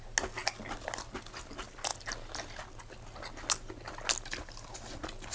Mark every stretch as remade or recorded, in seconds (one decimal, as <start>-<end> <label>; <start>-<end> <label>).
0.0-5.3 recorded